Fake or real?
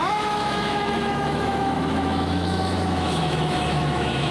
fake